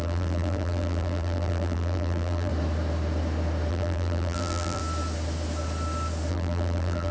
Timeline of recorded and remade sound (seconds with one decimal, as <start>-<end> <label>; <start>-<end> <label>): 0.0-2.5 remade; 2.5-3.7 recorded; 3.7-4.8 remade; 4.8-6.3 recorded; 6.3-7.1 remade

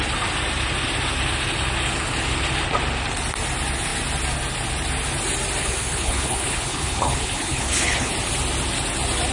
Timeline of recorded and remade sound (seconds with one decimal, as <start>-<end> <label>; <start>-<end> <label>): 0.0-5.6 recorded; 5.6-8.1 remade; 8.1-9.3 recorded

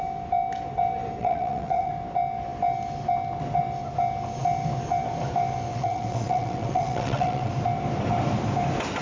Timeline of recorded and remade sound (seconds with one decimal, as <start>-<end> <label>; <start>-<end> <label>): 0.0-1.2 recorded; 1.2-1.9 remade; 1.9-5.7 recorded; 5.7-7.5 remade; 7.5-9.0 recorded

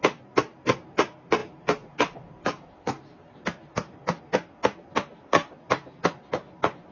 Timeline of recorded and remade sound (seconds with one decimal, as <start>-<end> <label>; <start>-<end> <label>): 0.0-1.4 recorded; 1.4-4.2 remade; 4.2-5.1 recorded; 5.1-6.3 remade; 6.3-6.9 recorded

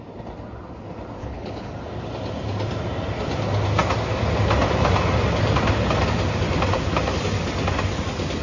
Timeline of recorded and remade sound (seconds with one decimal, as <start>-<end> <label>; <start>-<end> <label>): 0.0-1.2 recorded; 1.2-1.7 remade; 1.7-8.4 recorded